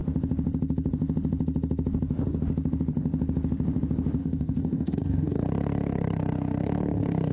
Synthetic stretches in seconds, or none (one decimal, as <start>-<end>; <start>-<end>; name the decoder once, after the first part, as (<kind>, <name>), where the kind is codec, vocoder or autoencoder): 4.2-7.3 (codec, SNAC)